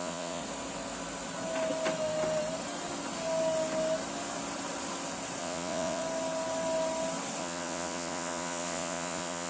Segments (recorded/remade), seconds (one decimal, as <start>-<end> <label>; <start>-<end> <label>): 0.0-0.4 remade; 0.4-5.4 recorded; 5.4-6.0 remade; 6.0-7.4 recorded; 7.4-9.5 remade